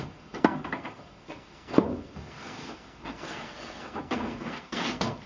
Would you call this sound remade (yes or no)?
yes